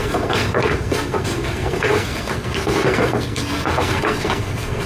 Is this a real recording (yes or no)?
no